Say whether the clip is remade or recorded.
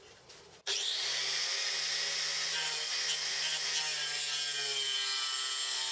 recorded